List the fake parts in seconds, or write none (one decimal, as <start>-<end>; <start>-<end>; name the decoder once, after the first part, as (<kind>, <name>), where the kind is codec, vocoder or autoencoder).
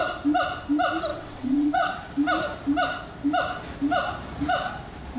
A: 1.1-1.9 (vocoder, WaveNeXt)